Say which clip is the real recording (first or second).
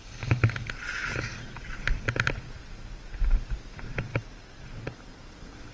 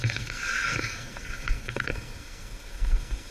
first